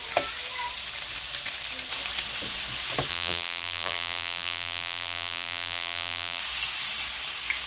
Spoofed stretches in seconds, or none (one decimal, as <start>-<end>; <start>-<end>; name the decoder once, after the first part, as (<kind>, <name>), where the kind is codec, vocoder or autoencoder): 3.1-6.4 (vocoder, BigVGAN v2)